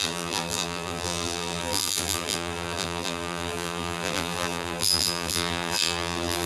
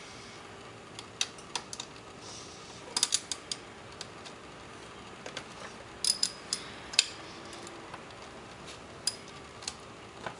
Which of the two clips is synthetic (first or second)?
first